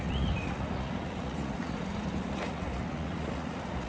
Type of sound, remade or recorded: remade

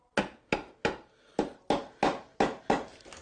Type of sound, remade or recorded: recorded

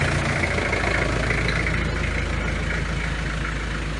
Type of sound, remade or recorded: recorded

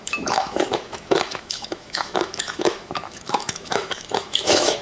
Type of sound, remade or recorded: remade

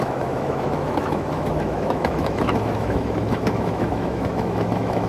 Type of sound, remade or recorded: remade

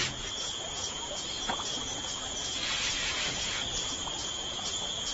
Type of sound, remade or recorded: remade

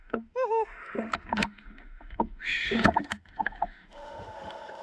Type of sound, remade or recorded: remade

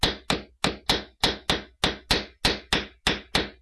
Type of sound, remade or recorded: recorded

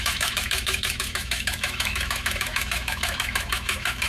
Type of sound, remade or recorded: remade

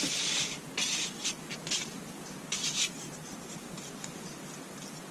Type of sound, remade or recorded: recorded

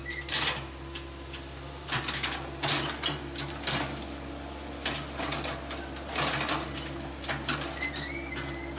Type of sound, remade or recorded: recorded